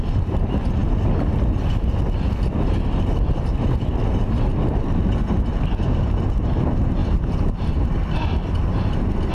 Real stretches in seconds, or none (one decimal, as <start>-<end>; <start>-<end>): 0.0-7.0; 8.0-9.3

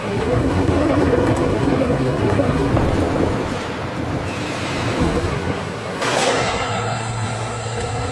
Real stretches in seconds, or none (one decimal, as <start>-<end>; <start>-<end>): 2.7-5.0

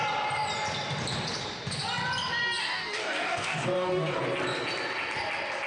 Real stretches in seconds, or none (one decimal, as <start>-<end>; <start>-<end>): 0.0-2.6; 4.2-5.7

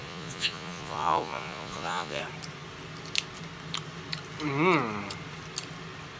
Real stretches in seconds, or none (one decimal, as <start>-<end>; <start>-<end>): 2.2-6.2

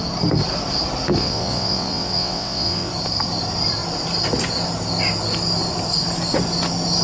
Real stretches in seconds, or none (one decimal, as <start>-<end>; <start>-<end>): 0.0-1.2; 2.9-7.0

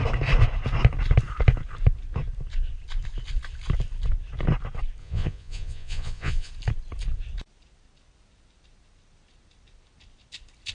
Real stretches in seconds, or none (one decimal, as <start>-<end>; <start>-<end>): 0.0-5.0; 6.5-10.7

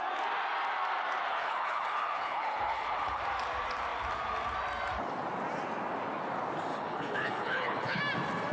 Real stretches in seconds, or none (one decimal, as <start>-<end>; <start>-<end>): 0.0-1.3; 3.2-6.7; 8.0-8.5

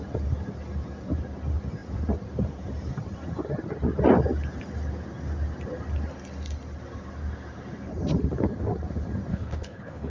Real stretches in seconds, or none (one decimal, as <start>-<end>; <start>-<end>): 0.0-9.3